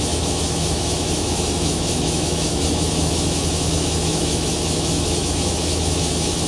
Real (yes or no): no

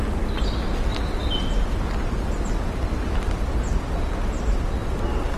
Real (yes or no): yes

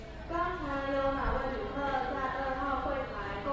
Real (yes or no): yes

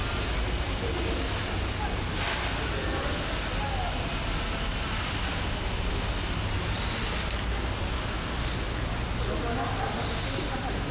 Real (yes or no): yes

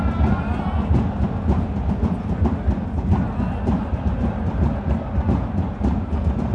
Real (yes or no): yes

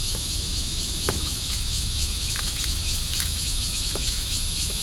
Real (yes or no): no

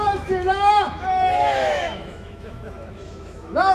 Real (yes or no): no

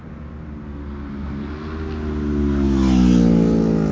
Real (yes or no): yes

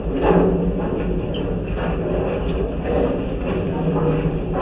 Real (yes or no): yes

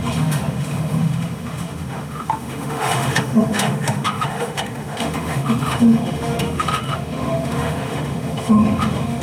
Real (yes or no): no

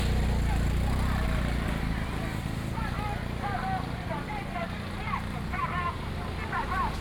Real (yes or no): yes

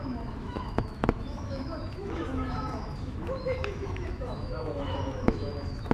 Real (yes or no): no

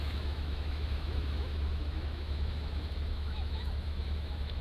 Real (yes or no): no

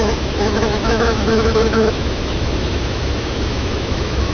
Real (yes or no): no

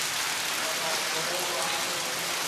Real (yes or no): yes